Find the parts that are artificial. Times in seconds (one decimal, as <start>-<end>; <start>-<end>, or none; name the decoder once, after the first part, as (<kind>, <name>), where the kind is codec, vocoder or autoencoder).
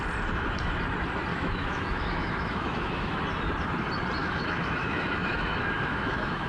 1.3-3.2 (autoencoder, DAC-VAE); 4.2-6.5